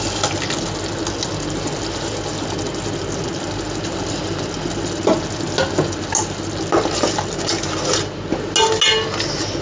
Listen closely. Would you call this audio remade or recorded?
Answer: recorded